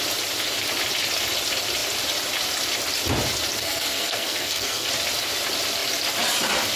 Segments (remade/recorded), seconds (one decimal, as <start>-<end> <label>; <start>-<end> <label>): 0.0-3.6 recorded; 3.6-4.9 remade; 4.9-6.8 recorded